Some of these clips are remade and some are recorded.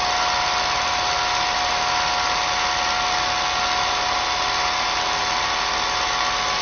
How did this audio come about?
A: recorded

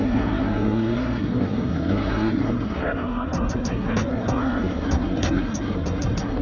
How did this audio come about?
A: remade